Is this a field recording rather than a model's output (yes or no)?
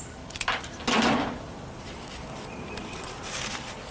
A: yes